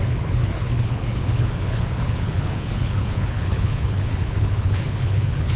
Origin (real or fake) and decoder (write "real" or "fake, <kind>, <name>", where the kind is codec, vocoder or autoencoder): fake, codec, HILCodec